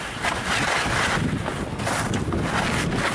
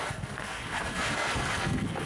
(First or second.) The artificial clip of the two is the second